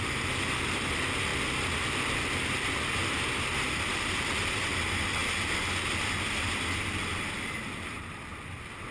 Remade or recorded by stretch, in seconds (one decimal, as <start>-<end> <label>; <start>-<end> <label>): 0.0-8.9 recorded

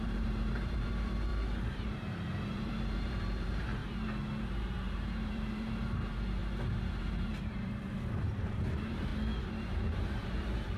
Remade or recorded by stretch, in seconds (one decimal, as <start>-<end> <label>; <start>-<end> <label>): 0.0-3.8 remade; 3.8-4.6 recorded; 4.6-6.4 remade; 6.4-7.0 recorded; 7.0-9.1 remade; 9.1-9.7 recorded; 9.7-10.8 remade

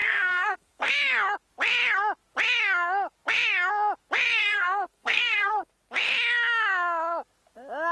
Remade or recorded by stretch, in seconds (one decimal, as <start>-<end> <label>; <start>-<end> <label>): 0.0-0.9 remade; 0.9-4.4 recorded; 4.4-5.7 remade; 5.7-7.9 recorded